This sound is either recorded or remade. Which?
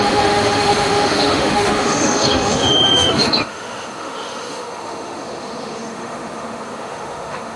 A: remade